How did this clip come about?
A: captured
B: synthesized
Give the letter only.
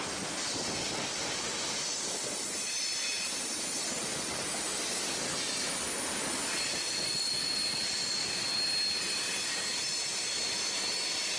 A